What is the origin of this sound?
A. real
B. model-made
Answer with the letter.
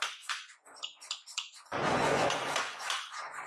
B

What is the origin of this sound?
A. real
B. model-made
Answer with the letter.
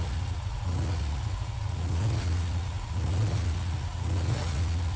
B